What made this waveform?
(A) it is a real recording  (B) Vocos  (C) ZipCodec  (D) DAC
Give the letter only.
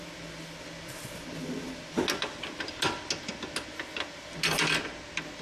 A